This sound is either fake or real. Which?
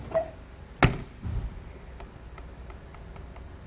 real